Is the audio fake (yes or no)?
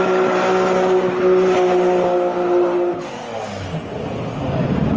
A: no